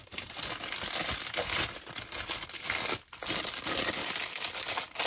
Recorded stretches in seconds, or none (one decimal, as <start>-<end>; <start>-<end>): 0.0-5.1